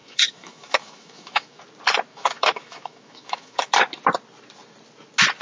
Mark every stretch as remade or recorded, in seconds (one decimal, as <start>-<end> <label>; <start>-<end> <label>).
0.0-1.6 remade; 1.6-2.1 recorded; 2.1-3.7 remade; 3.7-5.4 recorded